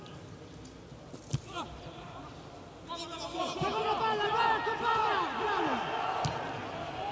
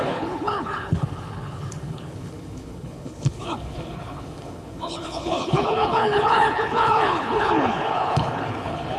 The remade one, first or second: second